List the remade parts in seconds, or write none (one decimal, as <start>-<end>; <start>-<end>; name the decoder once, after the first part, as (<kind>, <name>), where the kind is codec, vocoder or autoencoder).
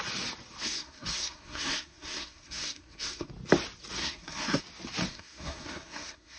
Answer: 0.6-3.3 (codec, SNAC); 4.0-4.6; 5.1-6.4